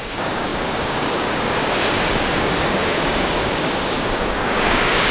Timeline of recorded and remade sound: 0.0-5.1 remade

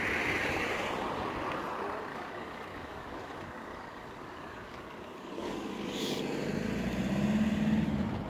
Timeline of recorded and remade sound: 0.0-2.1 recorded; 2.1-6.2 remade; 6.2-8.3 recorded

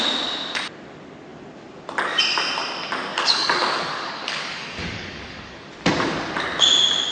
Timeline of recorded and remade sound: 0.0-3.1 recorded; 3.1-5.7 remade; 5.7-7.1 recorded

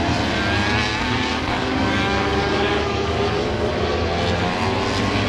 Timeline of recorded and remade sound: 0.0-0.9 recorded; 0.9-3.7 remade; 3.7-5.3 recorded

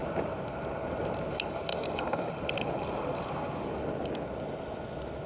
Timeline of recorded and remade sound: 0.0-1.7 recorded; 1.7-2.3 remade; 2.3-5.3 recorded

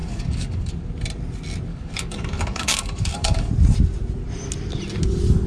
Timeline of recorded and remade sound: 0.0-0.7 remade; 0.7-1.7 recorded; 1.7-3.5 remade; 3.5-5.5 recorded

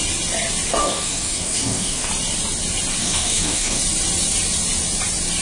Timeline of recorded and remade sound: 0.0-0.8 recorded; 0.8-2.1 remade; 2.1-3.0 recorded; 3.0-3.8 remade; 3.8-5.4 recorded

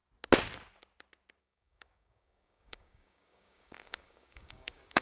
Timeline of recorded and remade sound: 0.0-1.4 recorded; 1.4-5.0 remade